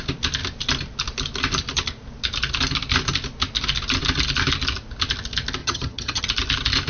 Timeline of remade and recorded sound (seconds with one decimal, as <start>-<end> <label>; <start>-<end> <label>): 0.0-5.6 recorded; 5.6-6.2 remade; 6.2-6.9 recorded